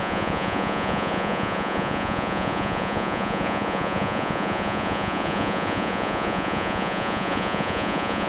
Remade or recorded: remade